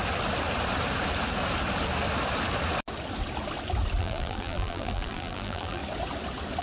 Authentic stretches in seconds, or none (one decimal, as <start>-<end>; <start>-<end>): 0.0-4.0; 5.8-6.6